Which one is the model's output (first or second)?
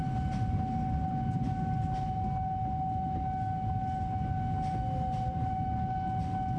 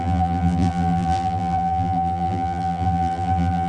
second